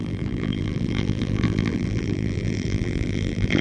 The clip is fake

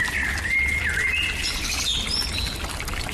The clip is real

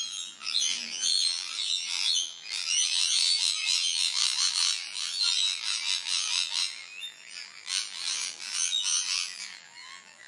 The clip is fake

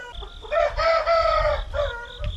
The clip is real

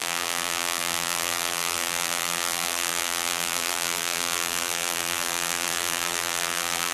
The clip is fake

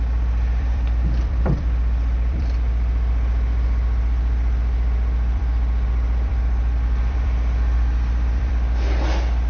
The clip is fake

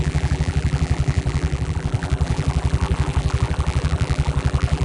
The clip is fake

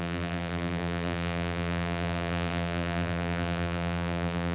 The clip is fake